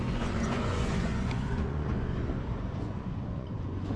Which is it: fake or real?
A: fake